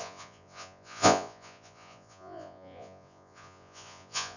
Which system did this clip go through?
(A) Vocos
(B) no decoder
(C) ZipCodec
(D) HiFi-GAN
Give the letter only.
A